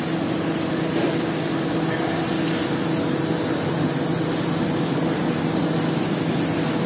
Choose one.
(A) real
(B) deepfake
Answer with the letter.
A